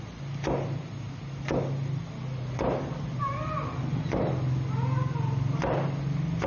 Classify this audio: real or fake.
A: real